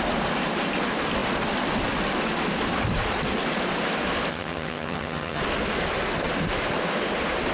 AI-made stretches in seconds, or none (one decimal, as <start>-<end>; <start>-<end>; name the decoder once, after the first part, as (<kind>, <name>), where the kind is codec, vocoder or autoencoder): 4.3-5.4 (vocoder, HiFi-GAN)